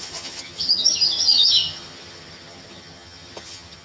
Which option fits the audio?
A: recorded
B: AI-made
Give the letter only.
B